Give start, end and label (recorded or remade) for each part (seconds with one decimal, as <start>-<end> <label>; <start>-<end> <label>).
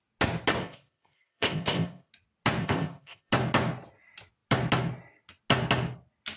0.0-0.6 recorded; 0.6-2.1 remade; 2.1-2.6 recorded; 2.6-3.3 remade; 3.3-6.4 recorded